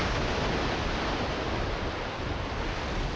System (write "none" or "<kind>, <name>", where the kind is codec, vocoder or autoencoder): none